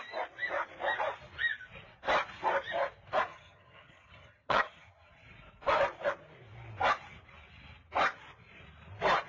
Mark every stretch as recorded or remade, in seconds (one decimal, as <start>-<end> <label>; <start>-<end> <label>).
0.0-3.3 recorded; 3.3-5.1 remade; 5.1-9.3 recorded